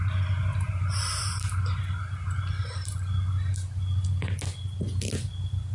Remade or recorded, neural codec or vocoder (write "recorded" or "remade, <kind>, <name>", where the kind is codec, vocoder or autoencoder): recorded